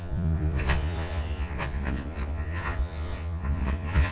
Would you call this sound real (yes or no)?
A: no